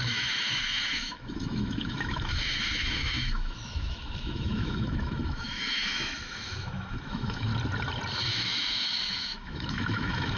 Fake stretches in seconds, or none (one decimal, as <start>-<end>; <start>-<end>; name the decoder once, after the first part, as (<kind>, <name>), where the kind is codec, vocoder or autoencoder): 0.0-7.5 (autoencoder, DAC-VAE); 8.3-10.4